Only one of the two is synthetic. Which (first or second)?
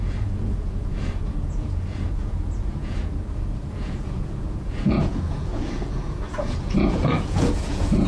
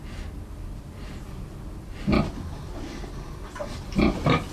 first